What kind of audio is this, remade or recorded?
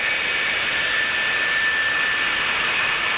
recorded